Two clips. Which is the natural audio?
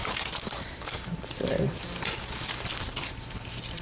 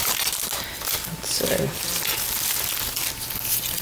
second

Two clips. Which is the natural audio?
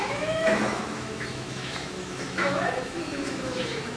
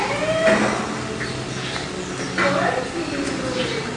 second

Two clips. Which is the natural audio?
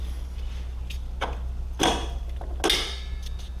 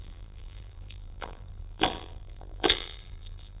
first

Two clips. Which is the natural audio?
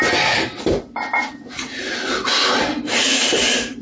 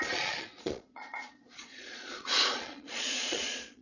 first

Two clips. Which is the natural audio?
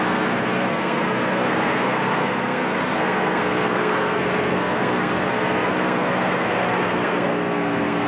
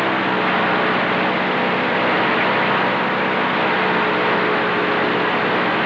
second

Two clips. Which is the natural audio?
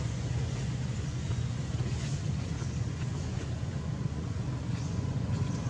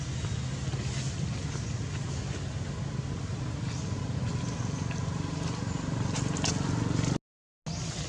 second